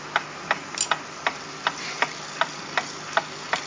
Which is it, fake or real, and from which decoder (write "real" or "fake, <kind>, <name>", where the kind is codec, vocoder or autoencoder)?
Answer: real